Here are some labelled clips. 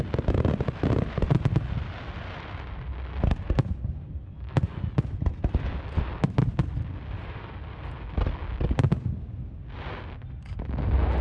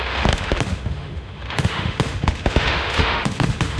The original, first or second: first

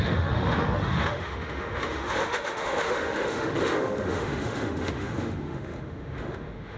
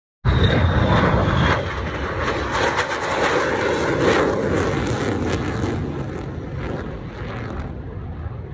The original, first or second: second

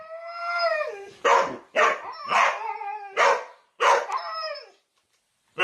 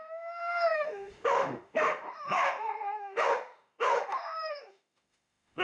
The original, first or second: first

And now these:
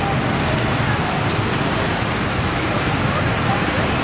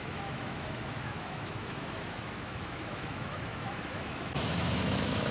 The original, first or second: first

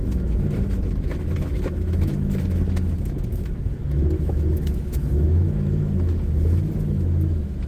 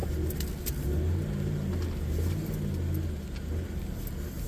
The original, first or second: second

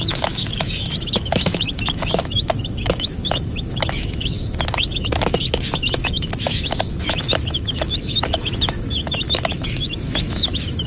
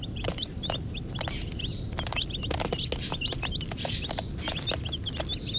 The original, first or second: second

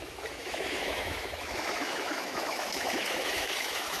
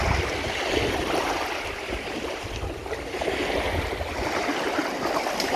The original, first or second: second